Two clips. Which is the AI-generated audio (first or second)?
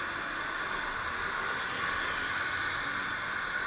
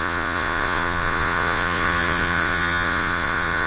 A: second